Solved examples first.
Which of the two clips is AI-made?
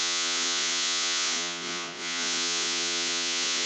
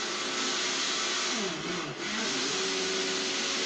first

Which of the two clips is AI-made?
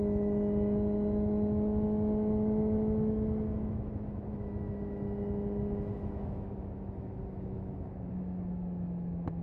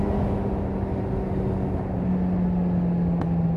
first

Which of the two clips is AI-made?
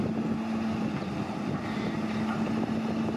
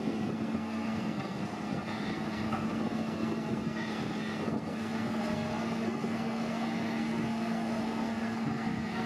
second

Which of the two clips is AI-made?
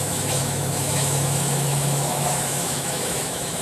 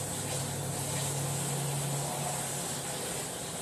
first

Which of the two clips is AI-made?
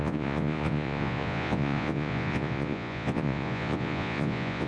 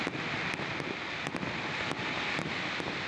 first